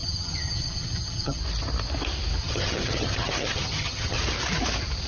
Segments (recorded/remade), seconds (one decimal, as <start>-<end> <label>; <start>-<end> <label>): 0.0-1.4 remade; 1.4-2.4 recorded; 2.4-4.2 remade; 4.2-5.1 recorded

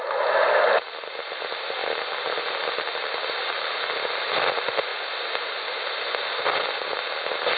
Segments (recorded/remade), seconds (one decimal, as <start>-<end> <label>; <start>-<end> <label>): 0.0-7.6 recorded